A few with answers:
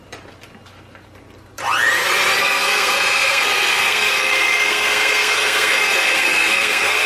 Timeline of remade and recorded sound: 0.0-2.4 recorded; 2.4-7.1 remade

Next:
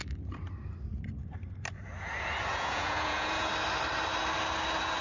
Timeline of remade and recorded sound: 0.0-2.5 recorded; 2.5-3.5 remade; 3.5-5.0 recorded

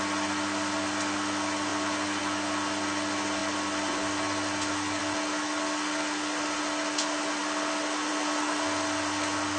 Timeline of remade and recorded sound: 0.0-9.6 recorded

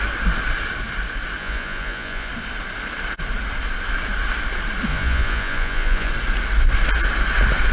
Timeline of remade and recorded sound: 0.0-1.4 recorded; 1.4-2.3 remade; 2.3-4.9 recorded; 4.9-6.1 remade; 6.1-7.7 recorded